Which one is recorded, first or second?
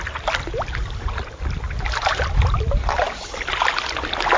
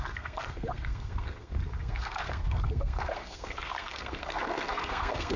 first